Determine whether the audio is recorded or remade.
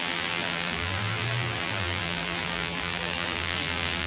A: remade